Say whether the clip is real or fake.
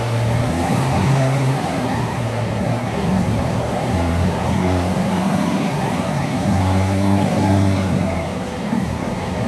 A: fake